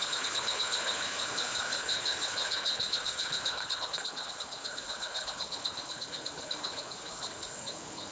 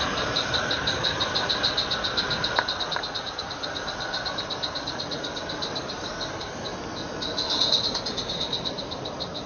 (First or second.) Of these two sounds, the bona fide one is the second